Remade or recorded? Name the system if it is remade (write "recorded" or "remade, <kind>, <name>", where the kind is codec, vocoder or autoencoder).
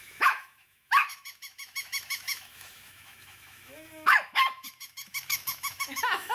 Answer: remade, autoencoder, DAC-VAE